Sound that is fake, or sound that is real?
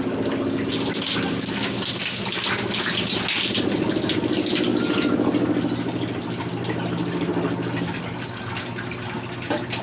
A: real